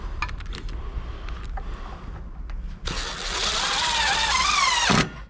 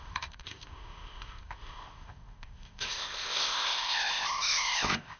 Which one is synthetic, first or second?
second